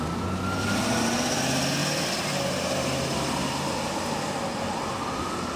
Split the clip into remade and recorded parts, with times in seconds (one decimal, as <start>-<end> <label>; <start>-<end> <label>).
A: 0.0-5.6 recorded